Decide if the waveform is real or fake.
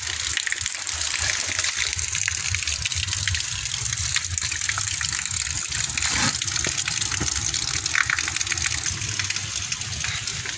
fake